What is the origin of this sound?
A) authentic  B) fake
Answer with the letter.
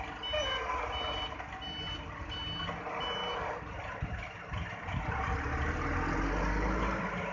A